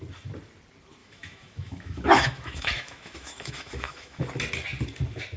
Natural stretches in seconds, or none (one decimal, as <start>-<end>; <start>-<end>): 0.0-1.0; 4.2-5.4